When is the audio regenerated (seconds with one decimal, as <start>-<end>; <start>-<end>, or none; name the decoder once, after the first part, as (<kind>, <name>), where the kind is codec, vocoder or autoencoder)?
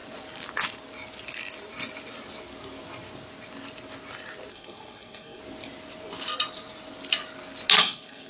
4.5-5.4 (codec, SNAC); 7.8-8.3